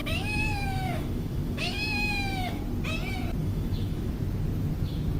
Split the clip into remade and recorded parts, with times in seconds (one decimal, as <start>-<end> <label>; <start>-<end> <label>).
0.0-2.6 remade; 2.6-3.4 recorded; 3.4-4.1 remade; 4.1-5.2 recorded